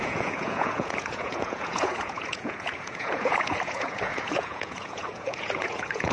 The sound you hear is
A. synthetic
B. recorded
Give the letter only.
A